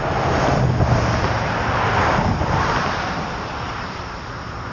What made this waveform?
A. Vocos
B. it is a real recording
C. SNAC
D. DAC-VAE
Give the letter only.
B